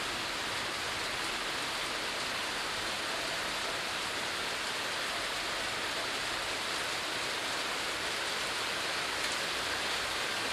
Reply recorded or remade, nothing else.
remade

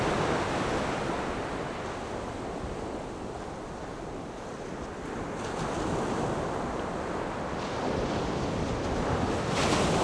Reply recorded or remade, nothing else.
recorded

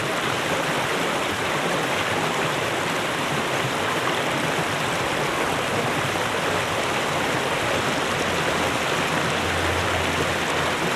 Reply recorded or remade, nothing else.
recorded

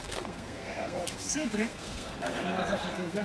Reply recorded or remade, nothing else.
remade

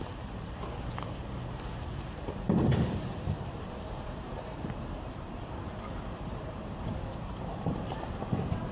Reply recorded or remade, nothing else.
remade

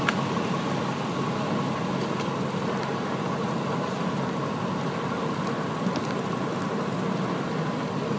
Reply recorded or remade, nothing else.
recorded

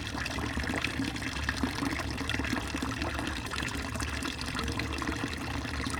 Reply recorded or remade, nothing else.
remade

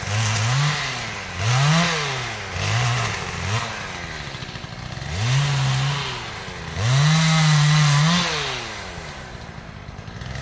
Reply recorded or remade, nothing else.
recorded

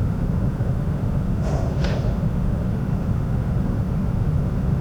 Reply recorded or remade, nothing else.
remade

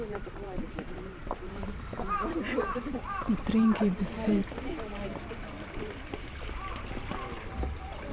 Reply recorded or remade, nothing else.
remade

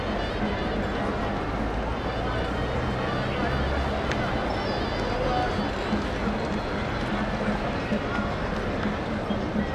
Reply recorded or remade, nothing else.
recorded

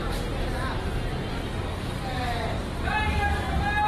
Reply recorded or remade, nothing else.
remade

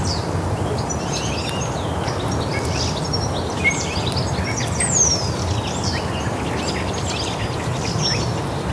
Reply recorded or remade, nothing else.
recorded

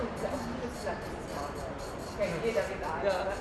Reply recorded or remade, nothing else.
recorded